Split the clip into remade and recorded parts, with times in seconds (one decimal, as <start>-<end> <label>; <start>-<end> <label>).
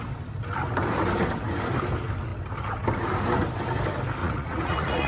0.0-4.2 recorded; 4.2-5.1 remade